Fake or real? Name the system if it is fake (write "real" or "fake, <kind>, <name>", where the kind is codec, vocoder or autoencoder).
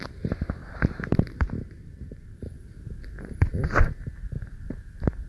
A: fake, vocoder, BigVGAN v2